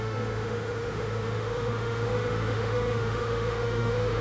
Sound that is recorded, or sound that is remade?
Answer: remade